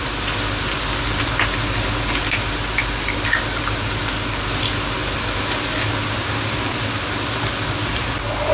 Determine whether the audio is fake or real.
real